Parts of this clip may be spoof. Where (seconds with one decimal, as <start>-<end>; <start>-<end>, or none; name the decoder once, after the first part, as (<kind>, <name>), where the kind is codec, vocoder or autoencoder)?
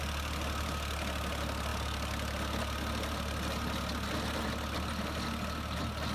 none